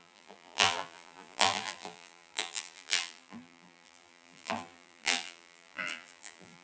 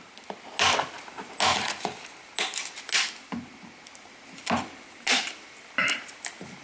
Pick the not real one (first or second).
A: first